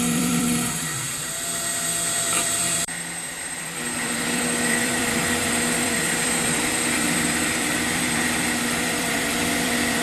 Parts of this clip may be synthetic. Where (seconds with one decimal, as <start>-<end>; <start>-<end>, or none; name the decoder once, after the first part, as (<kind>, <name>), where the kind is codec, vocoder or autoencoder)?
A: 0.0-10.0 (vocoder, BigVGAN v2)